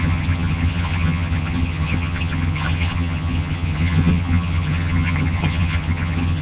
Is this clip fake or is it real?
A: fake